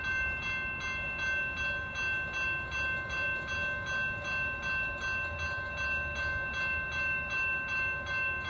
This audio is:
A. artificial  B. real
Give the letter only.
B